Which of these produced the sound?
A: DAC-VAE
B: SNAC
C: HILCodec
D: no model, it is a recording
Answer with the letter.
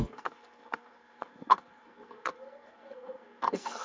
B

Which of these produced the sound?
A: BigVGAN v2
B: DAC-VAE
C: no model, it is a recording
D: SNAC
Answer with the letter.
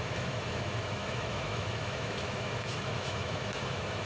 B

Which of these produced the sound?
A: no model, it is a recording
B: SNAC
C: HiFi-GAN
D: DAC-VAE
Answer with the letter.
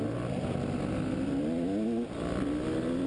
A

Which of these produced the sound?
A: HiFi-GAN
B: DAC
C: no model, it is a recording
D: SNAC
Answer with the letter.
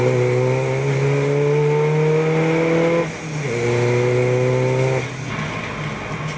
C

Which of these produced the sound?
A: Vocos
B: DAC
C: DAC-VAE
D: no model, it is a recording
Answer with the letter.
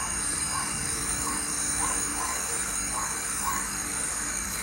B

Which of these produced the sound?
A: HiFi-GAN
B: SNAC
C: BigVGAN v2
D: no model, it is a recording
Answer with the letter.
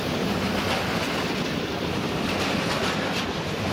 C